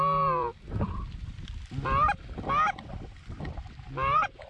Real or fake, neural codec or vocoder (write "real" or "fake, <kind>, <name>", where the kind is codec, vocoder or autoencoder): fake, vocoder, BigVGAN v2